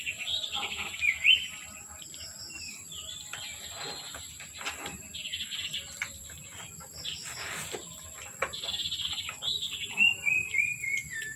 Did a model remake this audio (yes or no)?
yes